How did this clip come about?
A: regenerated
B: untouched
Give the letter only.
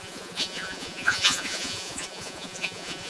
A